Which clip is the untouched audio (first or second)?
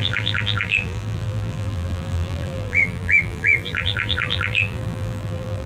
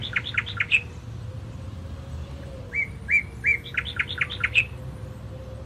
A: second